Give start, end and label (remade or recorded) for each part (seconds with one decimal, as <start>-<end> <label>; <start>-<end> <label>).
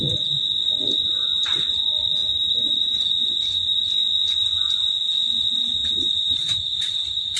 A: 0.0-2.2 recorded; 2.2-3.8 remade; 3.8-5.8 recorded; 5.8-6.9 remade; 6.9-7.4 recorded